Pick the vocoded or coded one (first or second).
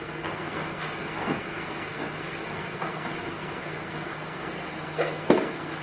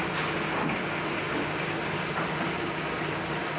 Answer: first